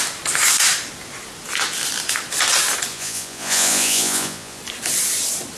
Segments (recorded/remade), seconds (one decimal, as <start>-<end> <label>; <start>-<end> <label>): 0.0-2.9 recorded; 2.9-4.6 remade; 4.6-5.6 recorded